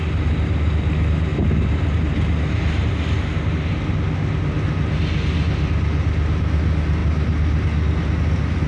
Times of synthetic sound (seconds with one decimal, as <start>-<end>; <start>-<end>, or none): 1.3-2.9